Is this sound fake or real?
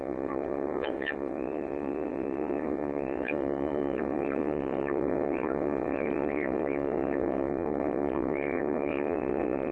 fake